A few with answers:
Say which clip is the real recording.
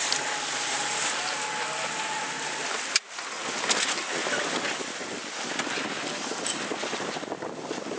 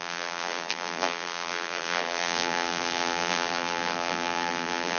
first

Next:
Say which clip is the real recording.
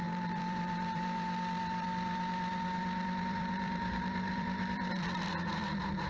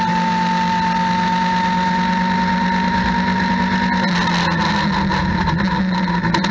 second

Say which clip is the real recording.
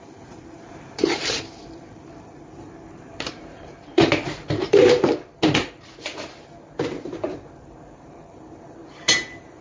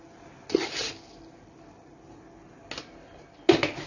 second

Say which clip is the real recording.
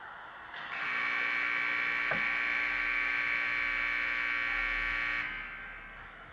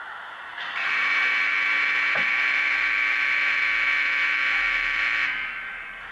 first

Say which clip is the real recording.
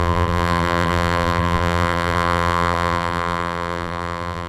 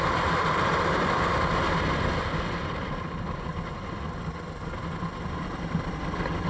second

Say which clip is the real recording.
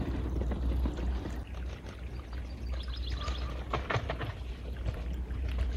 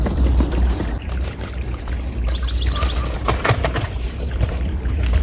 first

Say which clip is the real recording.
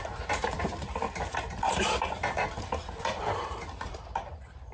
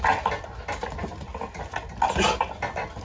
second